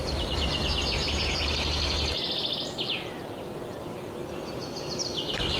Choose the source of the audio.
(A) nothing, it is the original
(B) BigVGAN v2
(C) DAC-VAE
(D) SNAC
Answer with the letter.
A